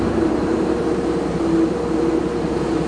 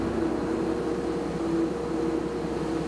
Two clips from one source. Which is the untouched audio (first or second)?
second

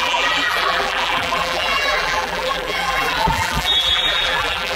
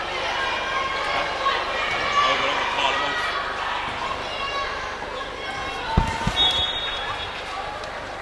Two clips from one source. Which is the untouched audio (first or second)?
second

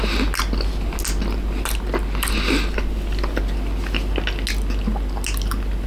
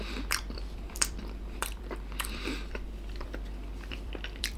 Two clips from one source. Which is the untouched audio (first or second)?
first